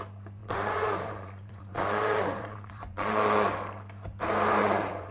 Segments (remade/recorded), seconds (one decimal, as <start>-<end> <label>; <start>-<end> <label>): 0.0-0.4 recorded; 0.4-3.5 remade; 3.5-4.6 recorded; 4.6-5.1 remade